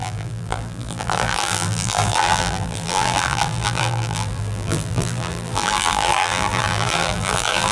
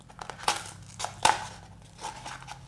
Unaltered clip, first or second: second